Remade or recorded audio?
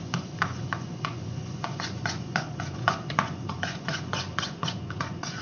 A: remade